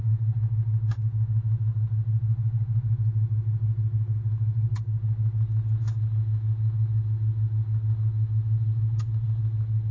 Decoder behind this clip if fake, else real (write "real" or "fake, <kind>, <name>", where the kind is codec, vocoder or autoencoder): real